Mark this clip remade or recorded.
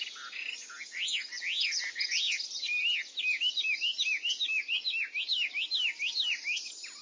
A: recorded